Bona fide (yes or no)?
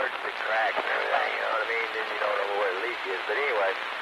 yes